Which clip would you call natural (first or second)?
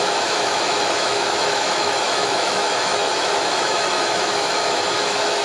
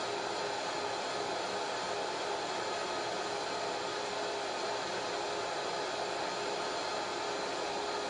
second